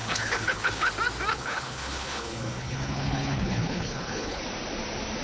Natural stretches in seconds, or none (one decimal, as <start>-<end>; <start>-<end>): 0.9-1.3; 4.4-5.2